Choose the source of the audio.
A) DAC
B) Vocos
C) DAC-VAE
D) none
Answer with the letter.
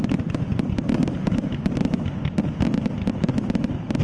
D